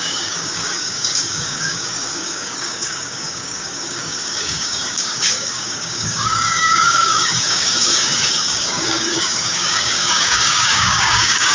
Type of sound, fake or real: fake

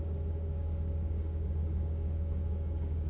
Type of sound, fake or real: fake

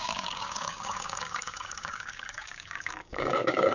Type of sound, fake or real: fake